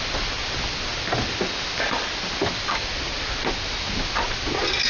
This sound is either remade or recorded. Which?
recorded